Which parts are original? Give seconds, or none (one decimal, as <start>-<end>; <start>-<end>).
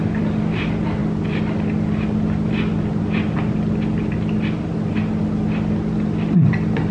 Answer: 0.0-6.9